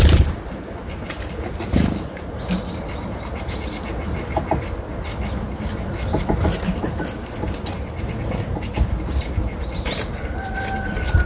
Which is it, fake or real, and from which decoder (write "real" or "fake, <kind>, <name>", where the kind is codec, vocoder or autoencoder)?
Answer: real